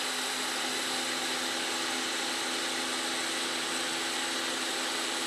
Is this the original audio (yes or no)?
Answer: yes